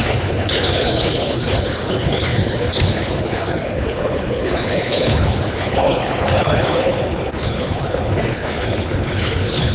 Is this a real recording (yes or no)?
no